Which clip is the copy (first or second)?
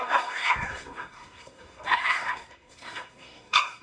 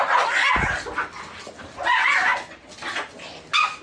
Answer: first